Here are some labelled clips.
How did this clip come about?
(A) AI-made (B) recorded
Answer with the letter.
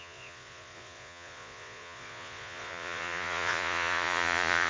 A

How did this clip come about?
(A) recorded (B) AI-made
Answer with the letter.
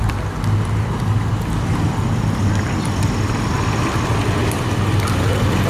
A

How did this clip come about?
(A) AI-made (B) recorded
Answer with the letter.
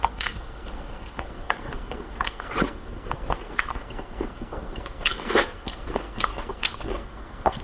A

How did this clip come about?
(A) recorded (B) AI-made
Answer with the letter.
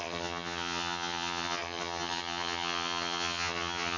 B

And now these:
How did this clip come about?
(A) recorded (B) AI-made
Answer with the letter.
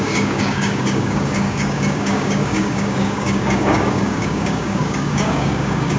B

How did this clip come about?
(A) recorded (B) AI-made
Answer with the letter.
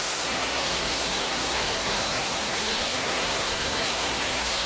B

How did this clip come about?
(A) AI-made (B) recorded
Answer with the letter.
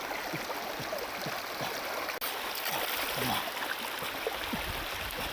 B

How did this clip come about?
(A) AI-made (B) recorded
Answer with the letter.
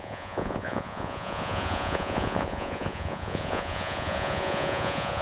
A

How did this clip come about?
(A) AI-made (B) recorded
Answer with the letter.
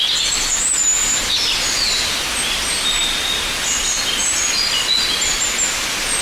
B